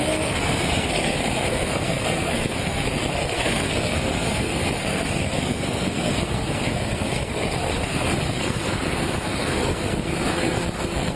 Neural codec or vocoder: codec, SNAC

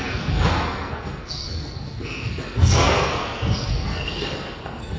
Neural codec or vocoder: codec, SNAC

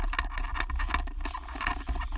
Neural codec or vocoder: none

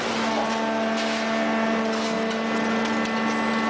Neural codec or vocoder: none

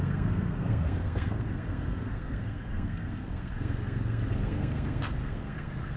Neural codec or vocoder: codec, SNAC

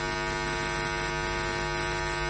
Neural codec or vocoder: none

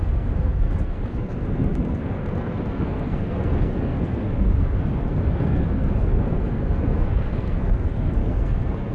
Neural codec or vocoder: codec, SNAC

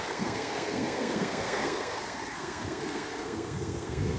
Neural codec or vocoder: codec, SNAC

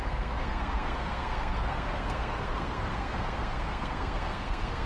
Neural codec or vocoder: codec, SNAC